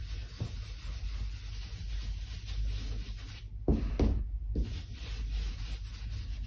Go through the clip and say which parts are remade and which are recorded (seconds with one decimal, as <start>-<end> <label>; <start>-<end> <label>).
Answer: 0.0-6.5 recorded